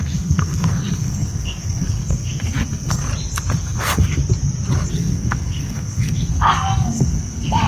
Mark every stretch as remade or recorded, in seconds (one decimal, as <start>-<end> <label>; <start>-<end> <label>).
0.0-3.1 remade; 3.1-3.6 recorded; 3.6-4.2 remade; 4.2-4.9 recorded; 4.9-7.7 remade